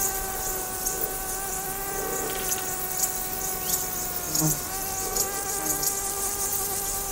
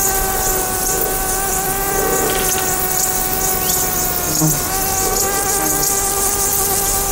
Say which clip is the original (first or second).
second